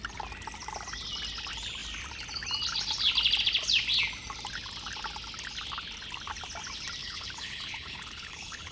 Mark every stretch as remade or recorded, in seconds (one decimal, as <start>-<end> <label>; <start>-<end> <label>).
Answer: 0.0-7.0 recorded; 7.0-8.7 remade